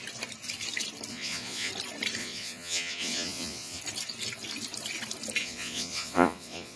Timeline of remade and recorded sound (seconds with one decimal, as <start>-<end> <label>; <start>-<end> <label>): 0.0-1.1 recorded; 1.1-1.7 remade; 1.7-2.2 recorded; 2.2-3.8 remade; 3.8-5.4 recorded; 5.4-6.8 remade